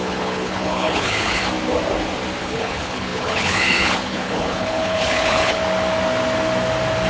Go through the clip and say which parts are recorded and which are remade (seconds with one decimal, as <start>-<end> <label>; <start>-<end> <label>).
0.0-1.4 remade; 1.4-2.4 recorded; 2.4-5.6 remade; 5.6-7.1 recorded